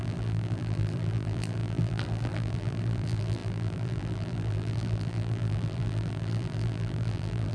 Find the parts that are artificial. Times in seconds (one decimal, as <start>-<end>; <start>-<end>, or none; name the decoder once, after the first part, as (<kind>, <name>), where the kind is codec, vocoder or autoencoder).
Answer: 0.0-7.5 (vocoder, BigVGAN v2)